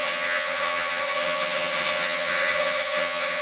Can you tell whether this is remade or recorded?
remade